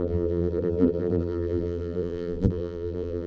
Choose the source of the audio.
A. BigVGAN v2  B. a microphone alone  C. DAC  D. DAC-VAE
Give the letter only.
A